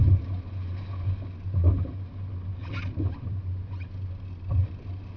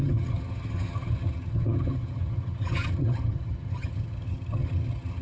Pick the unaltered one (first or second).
first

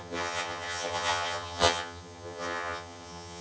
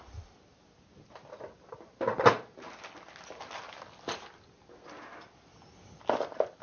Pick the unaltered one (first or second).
second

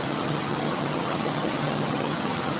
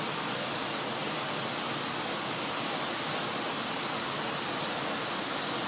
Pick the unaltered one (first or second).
second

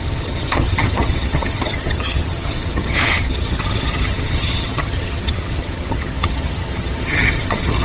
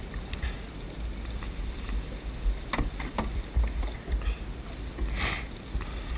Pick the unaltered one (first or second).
second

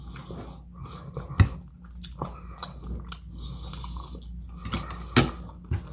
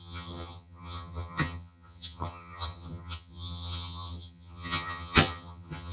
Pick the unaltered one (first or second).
first